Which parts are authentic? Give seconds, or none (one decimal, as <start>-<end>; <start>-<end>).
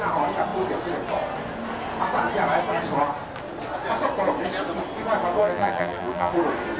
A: 0.0-5.4; 6.3-6.8